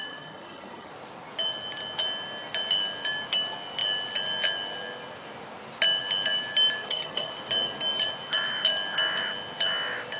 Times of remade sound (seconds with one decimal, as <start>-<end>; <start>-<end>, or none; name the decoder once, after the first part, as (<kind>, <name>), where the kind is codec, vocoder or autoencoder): 0.0-0.9 (vocoder, HiFi-GAN); 6.8-7.3